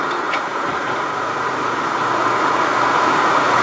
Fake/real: fake